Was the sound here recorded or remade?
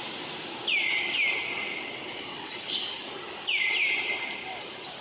recorded